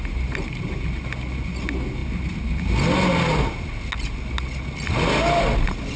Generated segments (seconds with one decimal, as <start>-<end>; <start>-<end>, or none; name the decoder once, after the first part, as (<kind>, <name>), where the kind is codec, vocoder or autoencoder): none